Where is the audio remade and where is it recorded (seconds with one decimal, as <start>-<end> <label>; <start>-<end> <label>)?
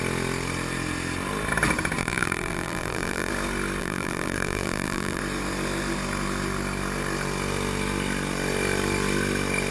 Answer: 0.0-2.0 recorded; 2.0-3.3 remade; 3.3-3.8 recorded; 3.8-5.2 remade; 5.2-9.7 recorded